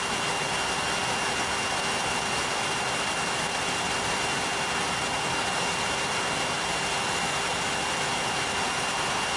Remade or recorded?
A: recorded